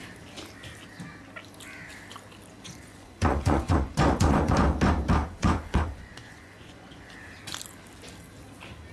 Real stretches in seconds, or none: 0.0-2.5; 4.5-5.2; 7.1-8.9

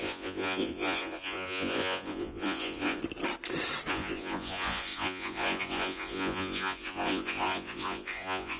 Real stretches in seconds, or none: 3.0-3.9

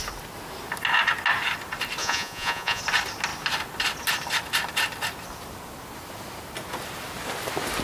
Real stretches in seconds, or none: 0.0-2.0; 2.8-7.8